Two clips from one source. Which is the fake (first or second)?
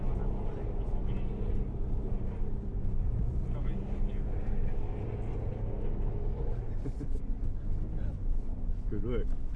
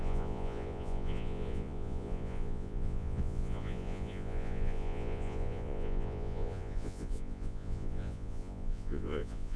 second